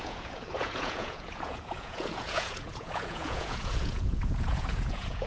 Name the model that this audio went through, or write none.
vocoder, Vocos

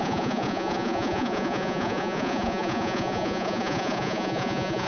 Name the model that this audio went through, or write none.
vocoder, Vocos